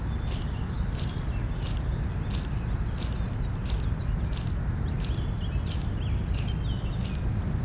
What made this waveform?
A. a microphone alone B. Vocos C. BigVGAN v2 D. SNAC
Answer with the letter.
A